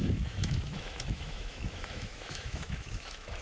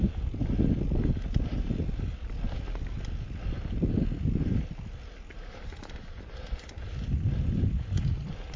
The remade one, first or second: first